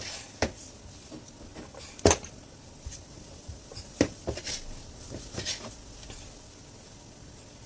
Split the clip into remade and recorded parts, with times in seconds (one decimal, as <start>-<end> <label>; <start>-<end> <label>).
0.0-7.7 recorded